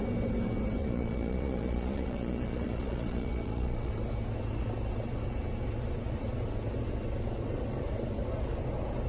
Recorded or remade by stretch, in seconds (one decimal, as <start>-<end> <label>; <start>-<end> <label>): 0.0-0.8 recorded; 0.8-3.9 remade; 3.9-9.1 recorded